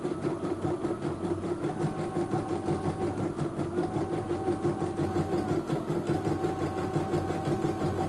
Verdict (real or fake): real